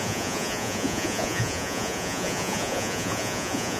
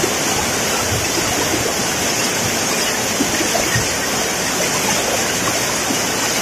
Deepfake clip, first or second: first